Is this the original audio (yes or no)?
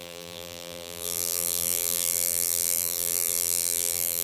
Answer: no